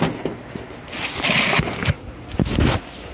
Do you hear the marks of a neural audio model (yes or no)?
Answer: no